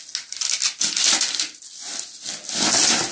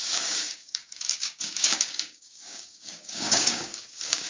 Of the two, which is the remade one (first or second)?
second